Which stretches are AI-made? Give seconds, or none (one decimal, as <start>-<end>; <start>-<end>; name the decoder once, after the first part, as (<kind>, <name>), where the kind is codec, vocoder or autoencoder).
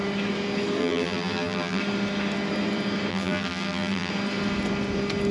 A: 0.8-1.8 (vocoder, BigVGAN v2); 3.1-4.1